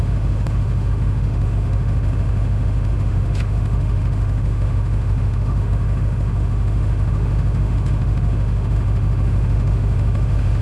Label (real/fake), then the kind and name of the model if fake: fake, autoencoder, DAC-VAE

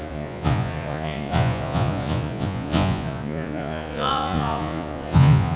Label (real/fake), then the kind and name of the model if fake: fake, vocoder, Vocos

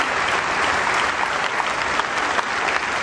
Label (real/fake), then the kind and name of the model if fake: real